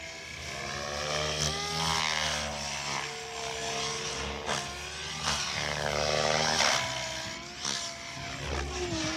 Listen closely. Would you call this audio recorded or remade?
recorded